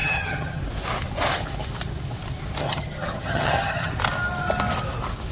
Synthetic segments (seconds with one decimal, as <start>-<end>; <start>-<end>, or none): 0.0-0.6; 2.6-3.9